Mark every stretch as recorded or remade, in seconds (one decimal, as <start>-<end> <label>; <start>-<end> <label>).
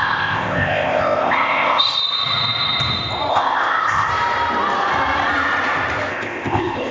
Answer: 0.0-2.0 remade; 2.0-3.3 recorded; 3.3-4.1 remade; 4.1-6.1 recorded; 6.1-6.9 remade